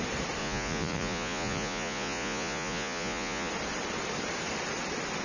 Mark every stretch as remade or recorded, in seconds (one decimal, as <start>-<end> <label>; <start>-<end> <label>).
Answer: 0.0-0.4 recorded; 0.4-3.5 remade; 3.5-5.2 recorded